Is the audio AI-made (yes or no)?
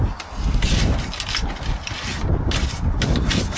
no